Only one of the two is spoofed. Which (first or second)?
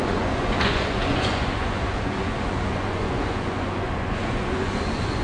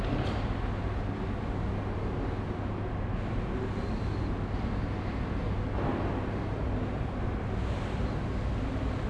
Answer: first